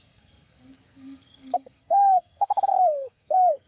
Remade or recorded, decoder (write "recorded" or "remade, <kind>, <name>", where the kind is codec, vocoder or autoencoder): remade, codec, SNAC